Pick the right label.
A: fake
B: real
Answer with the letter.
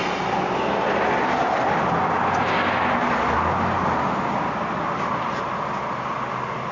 B